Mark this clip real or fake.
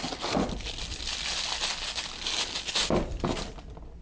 real